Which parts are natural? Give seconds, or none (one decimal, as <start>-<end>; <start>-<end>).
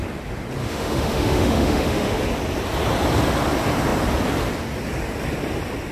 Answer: 0.0-0.6; 2.2-5.9